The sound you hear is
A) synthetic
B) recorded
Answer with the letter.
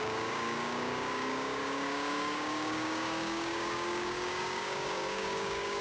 A